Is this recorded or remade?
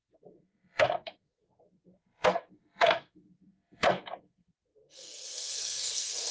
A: remade